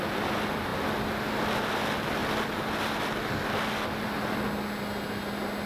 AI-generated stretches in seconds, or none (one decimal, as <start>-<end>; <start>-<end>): none